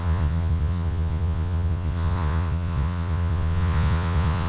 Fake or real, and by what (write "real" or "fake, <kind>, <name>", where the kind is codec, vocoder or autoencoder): fake, vocoder, Vocos